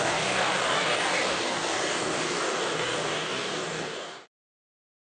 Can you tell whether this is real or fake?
fake